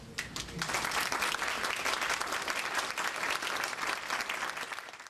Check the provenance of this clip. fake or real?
real